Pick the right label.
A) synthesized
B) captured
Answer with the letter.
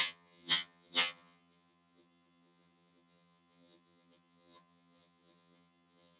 A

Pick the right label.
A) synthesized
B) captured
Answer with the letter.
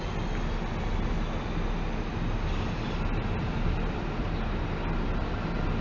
B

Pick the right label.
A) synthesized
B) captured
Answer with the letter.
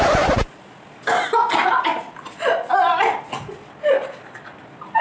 B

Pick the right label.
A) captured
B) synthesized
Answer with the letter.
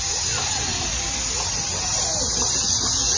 A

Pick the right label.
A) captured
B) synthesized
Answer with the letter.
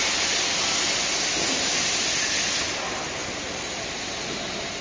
A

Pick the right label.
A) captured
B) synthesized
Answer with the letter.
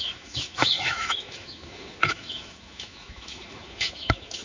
B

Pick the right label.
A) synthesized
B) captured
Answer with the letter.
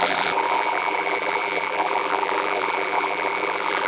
A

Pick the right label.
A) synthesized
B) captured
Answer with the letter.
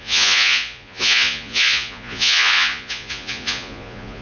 A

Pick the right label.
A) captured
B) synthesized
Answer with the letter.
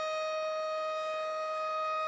A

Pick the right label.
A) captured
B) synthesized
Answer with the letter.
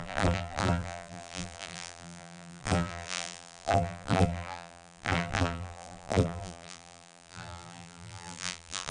B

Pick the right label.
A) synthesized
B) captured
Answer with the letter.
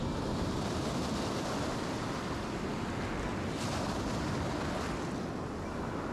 B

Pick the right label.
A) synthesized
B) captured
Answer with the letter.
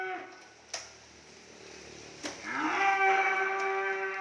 B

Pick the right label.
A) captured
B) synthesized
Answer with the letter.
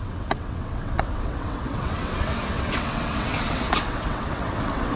B